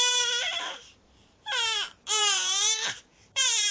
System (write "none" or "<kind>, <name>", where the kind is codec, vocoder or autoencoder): vocoder, BigVGAN v2